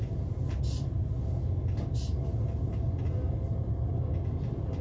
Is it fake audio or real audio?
real